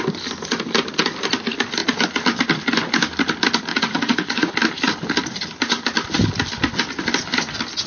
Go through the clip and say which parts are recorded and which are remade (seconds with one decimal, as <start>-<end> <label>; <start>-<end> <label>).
0.0-3.7 recorded; 3.7-4.5 remade; 4.5-7.9 recorded